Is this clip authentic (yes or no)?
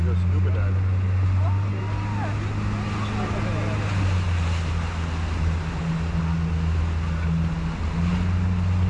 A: yes